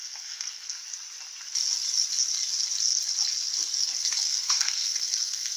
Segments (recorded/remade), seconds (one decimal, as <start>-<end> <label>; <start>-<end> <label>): 0.0-0.8 remade; 0.8-4.0 recorded; 4.0-5.6 remade